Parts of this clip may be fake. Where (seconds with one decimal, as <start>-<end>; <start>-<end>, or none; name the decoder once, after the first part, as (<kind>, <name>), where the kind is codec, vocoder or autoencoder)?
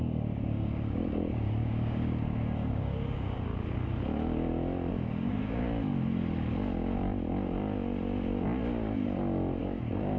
0.0-3.5 (codec, DAC); 4.9-5.6; 9.6-10.2